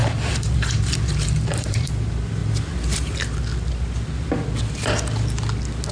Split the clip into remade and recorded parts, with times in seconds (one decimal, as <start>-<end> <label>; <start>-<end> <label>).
0.0-1.9 remade; 1.9-5.9 recorded